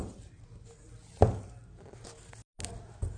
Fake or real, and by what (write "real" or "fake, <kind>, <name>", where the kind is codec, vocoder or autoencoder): real